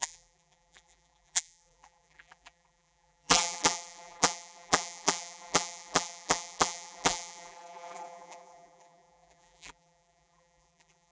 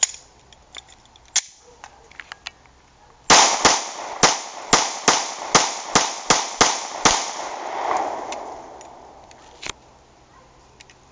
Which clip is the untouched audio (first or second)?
second